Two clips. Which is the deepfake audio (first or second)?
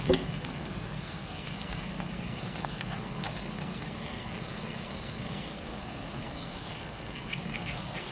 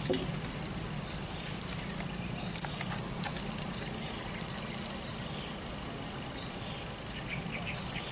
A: first